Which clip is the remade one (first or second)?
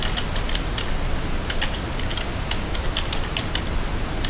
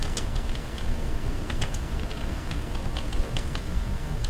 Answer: second